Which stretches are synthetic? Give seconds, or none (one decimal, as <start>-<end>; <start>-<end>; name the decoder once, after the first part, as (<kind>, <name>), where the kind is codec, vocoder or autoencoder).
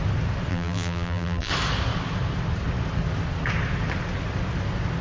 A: 0.5-1.5 (vocoder, BigVGAN v2)